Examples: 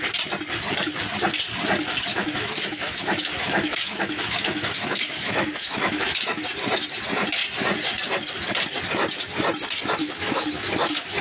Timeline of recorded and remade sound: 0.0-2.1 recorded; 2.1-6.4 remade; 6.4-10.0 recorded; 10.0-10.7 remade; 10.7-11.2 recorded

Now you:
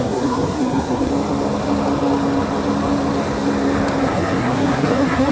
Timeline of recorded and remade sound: 0.0-1.1 remade; 1.1-4.0 recorded; 4.0-5.3 remade